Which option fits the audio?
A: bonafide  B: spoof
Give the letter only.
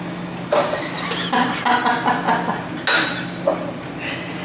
A